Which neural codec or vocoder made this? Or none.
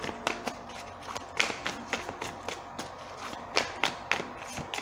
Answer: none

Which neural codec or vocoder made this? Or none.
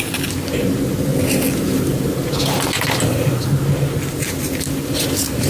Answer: none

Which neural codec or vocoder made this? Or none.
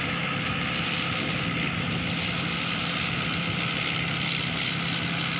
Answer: none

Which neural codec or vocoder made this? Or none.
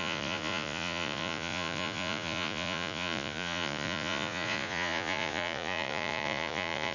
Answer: vocoder, Vocos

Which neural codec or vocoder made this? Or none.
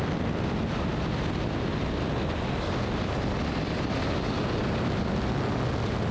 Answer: none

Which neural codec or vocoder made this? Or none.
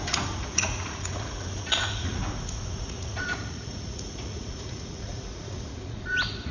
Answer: vocoder, Vocos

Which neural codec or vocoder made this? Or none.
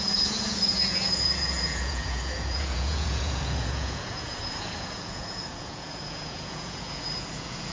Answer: vocoder, Vocos